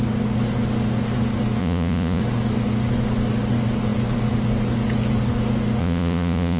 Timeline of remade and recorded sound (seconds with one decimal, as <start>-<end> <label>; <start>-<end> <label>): 0.0-1.6 recorded; 1.6-2.2 remade; 2.2-5.8 recorded; 5.8-6.6 remade